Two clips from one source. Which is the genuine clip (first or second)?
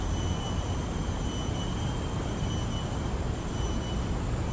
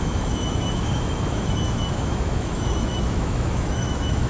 first